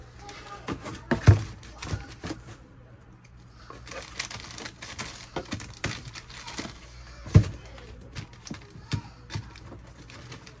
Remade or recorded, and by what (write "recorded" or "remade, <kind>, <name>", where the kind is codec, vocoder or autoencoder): recorded